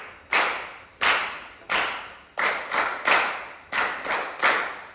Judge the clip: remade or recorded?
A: recorded